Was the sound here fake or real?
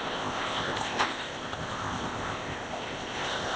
fake